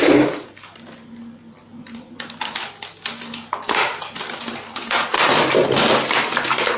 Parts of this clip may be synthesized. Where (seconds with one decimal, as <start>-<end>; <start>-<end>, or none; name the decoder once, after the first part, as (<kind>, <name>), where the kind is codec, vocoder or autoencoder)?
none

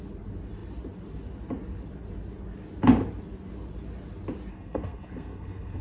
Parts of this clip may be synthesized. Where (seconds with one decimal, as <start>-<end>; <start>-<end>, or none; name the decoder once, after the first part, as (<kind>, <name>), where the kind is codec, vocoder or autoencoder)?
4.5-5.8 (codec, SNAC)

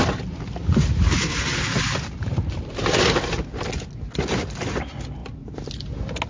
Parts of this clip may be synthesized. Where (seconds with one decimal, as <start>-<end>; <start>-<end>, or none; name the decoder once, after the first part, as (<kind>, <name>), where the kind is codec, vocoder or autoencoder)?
none

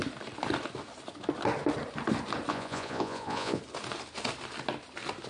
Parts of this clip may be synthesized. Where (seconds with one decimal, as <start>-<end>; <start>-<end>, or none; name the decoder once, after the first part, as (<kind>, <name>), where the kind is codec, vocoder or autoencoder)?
2.5-3.6 (vocoder, Vocos)